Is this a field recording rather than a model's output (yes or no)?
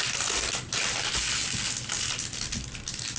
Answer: yes